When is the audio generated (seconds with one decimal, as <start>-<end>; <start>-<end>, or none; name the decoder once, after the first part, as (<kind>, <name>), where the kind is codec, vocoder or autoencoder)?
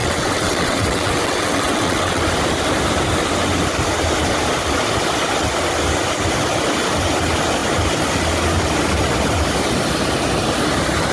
0.0-2.2 (vocoder, WaveNeXt)